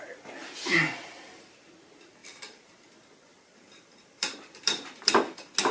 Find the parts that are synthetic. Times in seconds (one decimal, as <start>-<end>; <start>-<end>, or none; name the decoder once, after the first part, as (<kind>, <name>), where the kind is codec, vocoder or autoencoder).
2.2-2.9 (vocoder, BigVGAN v2); 3.3-5.1